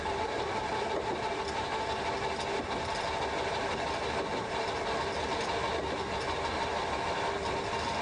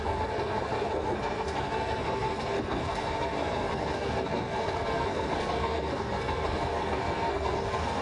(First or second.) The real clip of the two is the first